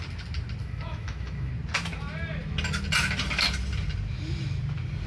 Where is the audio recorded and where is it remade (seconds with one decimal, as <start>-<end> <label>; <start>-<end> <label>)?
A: 0.0-0.6 recorded; 0.6-1.5 remade; 1.5-5.1 recorded